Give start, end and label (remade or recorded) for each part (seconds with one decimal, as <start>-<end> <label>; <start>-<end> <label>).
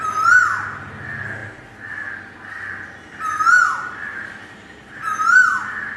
0.0-6.0 recorded